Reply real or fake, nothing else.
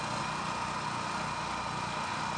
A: real